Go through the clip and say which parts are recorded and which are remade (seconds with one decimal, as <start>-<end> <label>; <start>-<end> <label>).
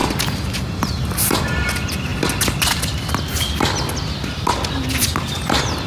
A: 0.0-5.9 recorded